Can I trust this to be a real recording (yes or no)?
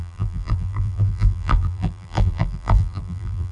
no